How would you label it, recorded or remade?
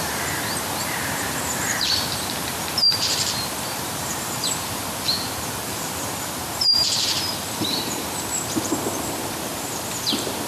remade